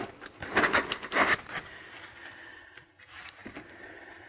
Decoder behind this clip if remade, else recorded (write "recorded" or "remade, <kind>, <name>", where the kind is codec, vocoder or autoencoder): recorded